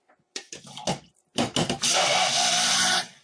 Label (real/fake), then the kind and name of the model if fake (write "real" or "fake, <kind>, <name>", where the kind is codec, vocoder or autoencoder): real